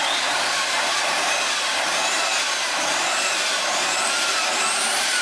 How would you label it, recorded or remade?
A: remade